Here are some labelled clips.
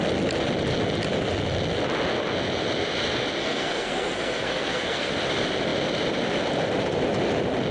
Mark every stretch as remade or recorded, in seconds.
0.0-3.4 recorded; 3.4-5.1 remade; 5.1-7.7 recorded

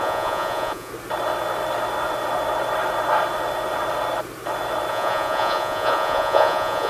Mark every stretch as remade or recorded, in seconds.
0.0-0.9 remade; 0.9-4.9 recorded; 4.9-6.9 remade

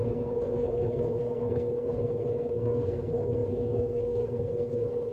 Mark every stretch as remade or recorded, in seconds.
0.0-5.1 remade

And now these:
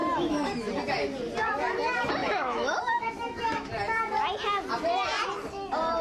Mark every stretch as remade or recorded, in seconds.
0.0-0.7 remade; 0.7-2.2 recorded; 2.2-3.7 remade; 3.7-6.0 recorded

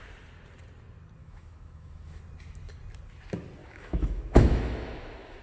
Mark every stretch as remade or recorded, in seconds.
0.0-1.2 recorded; 1.2-2.2 remade; 2.2-3.6 recorded; 3.6-5.4 remade